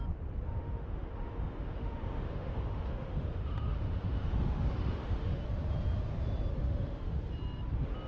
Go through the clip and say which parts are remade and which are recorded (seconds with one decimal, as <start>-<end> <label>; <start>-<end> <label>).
0.0-0.6 recorded; 0.6-5.4 remade; 5.4-6.6 recorded; 6.6-7.2 remade; 7.2-8.1 recorded

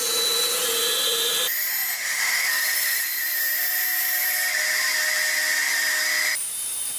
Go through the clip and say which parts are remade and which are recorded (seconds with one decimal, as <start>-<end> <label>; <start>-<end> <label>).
0.0-1.7 recorded; 1.7-2.5 remade; 2.5-7.0 recorded

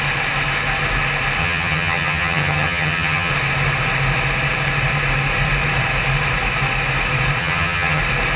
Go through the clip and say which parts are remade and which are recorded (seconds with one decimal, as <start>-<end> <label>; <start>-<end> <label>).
0.0-1.4 recorded; 1.4-3.3 remade; 3.3-7.4 recorded; 7.4-8.0 remade; 8.0-8.4 recorded

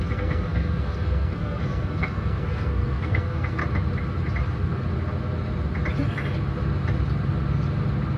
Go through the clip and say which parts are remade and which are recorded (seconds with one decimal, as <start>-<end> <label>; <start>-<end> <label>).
0.0-3.6 remade; 3.6-8.2 recorded

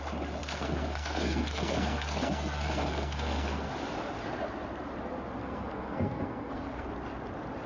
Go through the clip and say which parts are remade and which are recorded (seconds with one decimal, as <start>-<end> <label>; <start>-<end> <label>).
0.0-0.4 recorded; 0.4-3.7 remade; 3.7-5.4 recorded; 5.4-6.9 remade; 6.9-7.7 recorded

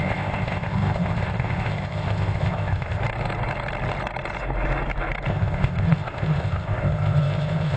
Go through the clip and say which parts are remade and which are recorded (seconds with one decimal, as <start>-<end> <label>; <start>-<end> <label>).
0.0-3.0 remade; 3.0-5.3 recorded; 5.3-7.8 remade